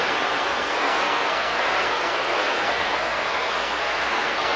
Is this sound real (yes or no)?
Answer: no